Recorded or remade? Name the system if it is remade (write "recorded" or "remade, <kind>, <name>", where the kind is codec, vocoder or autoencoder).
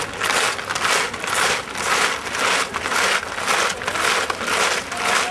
recorded